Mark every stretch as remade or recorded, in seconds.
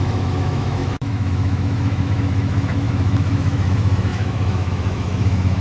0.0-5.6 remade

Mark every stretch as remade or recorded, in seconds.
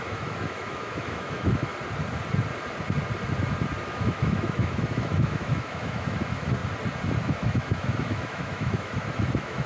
0.0-1.7 remade; 1.7-3.9 recorded; 3.9-6.6 remade; 6.6-7.2 recorded; 7.2-9.7 remade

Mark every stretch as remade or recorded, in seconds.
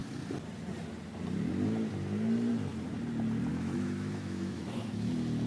0.0-3.5 recorded; 3.5-5.1 remade; 5.1-5.5 recorded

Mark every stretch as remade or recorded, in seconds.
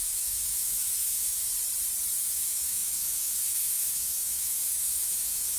0.0-1.5 remade; 1.5-2.2 recorded; 2.2-5.6 remade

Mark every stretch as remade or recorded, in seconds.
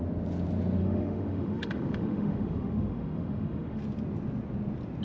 0.0-0.8 recorded; 0.8-3.8 remade; 3.8-5.0 recorded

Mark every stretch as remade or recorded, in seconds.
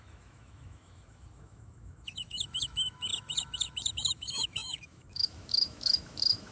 0.0-6.5 remade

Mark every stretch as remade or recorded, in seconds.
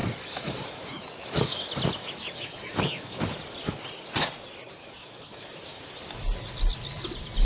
0.0-1.6 remade; 1.6-2.0 recorded; 2.0-3.3 remade; 3.3-4.8 recorded; 4.8-5.8 remade; 5.8-7.5 recorded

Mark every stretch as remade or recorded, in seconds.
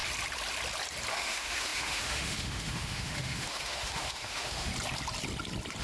0.0-1.1 recorded; 1.1-4.7 remade; 4.7-5.8 recorded